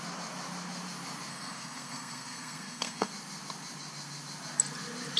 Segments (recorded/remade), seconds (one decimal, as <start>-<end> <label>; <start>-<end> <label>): 0.0-1.3 recorded; 1.3-3.1 remade; 3.1-5.2 recorded